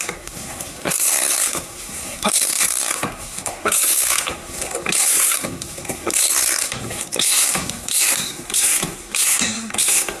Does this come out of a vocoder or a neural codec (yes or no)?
yes